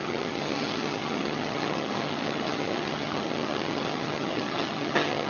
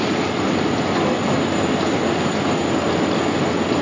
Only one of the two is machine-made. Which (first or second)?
first